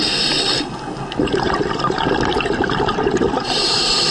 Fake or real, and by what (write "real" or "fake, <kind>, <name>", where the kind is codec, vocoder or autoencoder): real